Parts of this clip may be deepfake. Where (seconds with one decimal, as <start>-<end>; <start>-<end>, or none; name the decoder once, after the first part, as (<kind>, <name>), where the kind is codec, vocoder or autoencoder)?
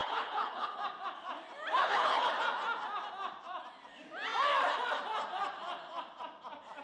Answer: 0.0-0.8 (codec, HILCodec); 1.8-2.3